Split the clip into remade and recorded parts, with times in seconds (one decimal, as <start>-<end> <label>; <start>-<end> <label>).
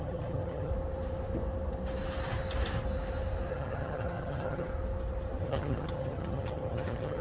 0.0-0.7 remade; 0.7-3.5 recorded; 3.5-4.7 remade; 4.7-5.4 recorded; 5.4-7.2 remade